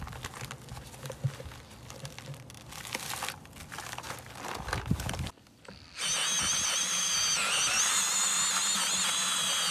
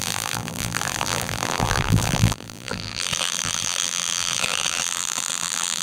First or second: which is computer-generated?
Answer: second